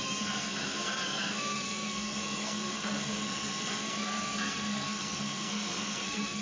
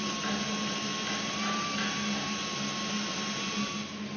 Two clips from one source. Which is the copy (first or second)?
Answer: first